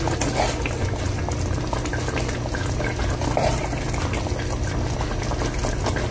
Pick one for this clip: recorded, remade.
recorded